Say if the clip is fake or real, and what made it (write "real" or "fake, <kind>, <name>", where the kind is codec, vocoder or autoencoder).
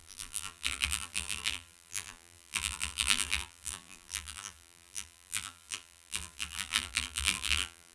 fake, vocoder, BigVGAN v2